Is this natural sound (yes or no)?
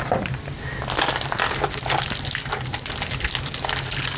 yes